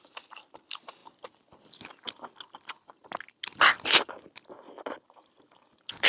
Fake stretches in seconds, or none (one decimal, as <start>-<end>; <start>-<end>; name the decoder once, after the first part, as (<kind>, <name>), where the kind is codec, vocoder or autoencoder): none